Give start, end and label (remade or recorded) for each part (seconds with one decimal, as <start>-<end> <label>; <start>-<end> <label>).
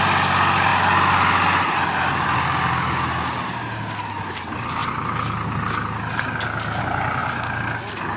0.0-8.2 recorded